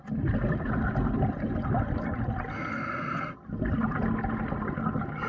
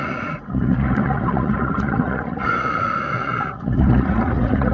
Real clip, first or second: first